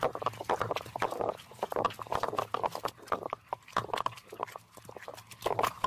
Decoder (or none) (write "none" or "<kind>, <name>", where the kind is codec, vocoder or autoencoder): none